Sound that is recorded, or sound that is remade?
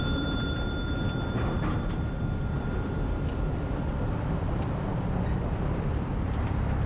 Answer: remade